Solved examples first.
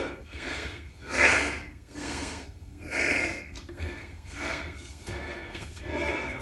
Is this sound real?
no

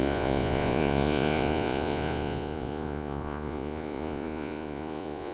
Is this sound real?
no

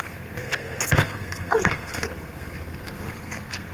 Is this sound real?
no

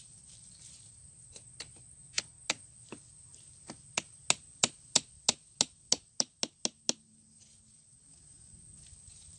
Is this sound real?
yes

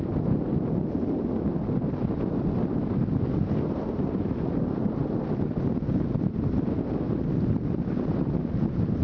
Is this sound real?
yes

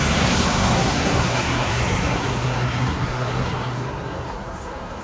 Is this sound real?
no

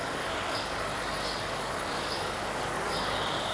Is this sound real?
no